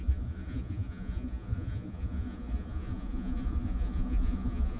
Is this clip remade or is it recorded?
remade